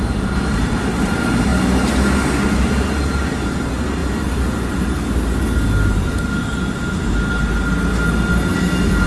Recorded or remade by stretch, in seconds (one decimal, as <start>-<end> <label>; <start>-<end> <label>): 0.0-1.5 remade; 1.5-2.4 recorded; 2.4-4.0 remade; 4.0-9.1 recorded